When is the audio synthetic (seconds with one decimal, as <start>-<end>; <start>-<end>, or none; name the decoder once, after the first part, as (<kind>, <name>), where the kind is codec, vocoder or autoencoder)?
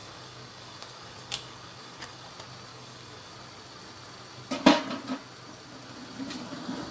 0.0-2.3 (codec, DAC); 2.7-3.3